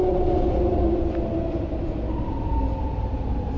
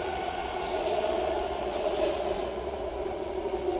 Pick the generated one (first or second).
second